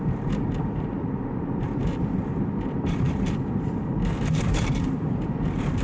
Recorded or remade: remade